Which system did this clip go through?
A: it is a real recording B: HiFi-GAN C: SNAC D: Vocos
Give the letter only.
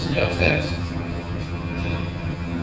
B